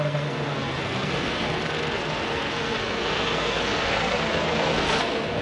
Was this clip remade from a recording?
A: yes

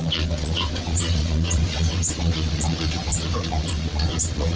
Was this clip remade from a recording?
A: yes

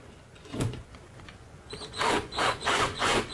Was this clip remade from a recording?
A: yes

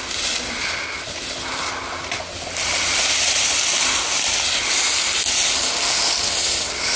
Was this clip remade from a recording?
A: no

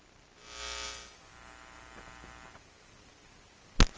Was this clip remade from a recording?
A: no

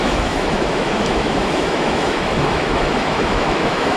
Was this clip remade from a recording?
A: yes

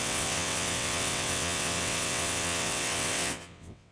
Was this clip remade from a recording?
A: yes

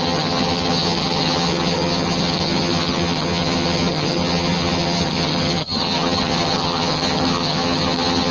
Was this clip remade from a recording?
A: yes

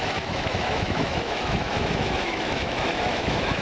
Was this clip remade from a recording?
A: yes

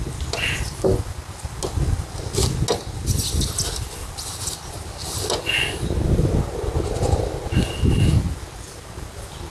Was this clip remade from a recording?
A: no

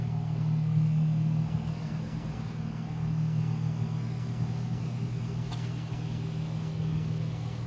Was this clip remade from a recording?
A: yes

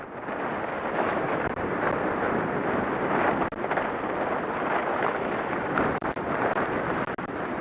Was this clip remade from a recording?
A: no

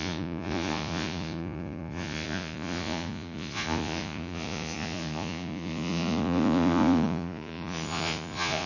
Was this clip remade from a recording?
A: yes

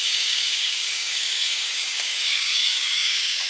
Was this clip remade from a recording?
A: yes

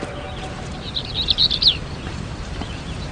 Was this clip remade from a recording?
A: yes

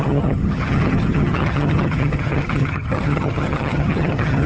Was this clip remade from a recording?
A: yes